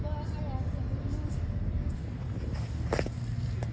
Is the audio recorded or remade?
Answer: recorded